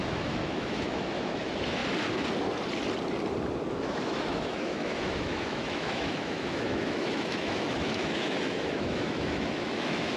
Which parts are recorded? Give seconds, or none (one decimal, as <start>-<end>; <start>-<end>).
1.8-3.7